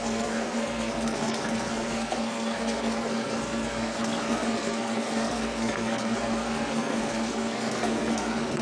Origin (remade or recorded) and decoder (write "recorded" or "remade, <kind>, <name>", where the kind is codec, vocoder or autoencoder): remade, codec, SNAC